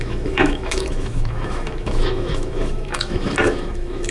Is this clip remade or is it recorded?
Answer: remade